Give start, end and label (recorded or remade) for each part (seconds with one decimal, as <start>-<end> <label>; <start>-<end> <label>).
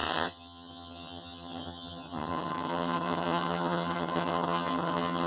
0.0-5.3 remade